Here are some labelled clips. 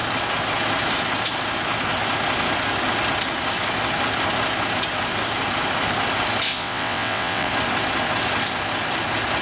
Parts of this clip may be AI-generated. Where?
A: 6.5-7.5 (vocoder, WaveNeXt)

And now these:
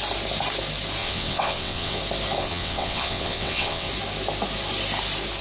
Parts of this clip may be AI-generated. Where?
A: 1.0-2.0 (vocoder, WaveNeXt); 2.4-3.9

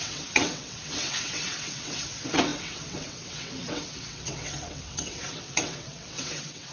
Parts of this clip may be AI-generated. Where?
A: 0.0-6.7 (vocoder, WaveNeXt)

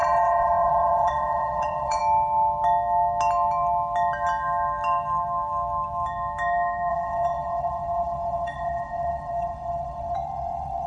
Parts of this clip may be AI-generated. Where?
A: 0.0-2.0 (vocoder, WaveNeXt); 6.9-10.9

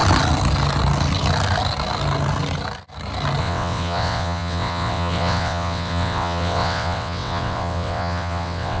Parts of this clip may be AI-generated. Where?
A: 3.4-8.8 (vocoder, WaveNeXt)

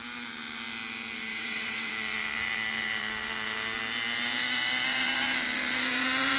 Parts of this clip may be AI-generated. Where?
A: 1.3-1.9 (vocoder, WaveNeXt)